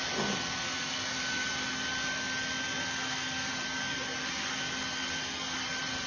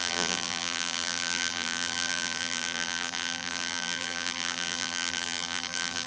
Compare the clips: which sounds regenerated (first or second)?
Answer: second